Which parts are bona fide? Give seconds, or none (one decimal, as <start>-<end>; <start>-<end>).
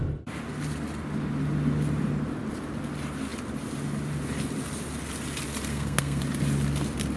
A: 0.0-5.7; 6.2-7.2